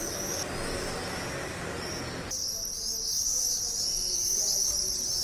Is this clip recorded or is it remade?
recorded